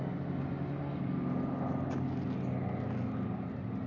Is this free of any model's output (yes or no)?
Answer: yes